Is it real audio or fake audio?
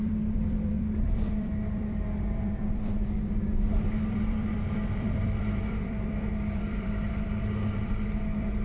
fake